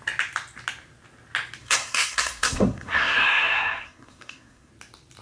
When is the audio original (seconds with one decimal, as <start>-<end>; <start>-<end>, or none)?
0.0-1.6; 4.7-5.2